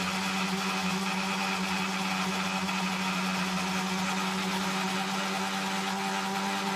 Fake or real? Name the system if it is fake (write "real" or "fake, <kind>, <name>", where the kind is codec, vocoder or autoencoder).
real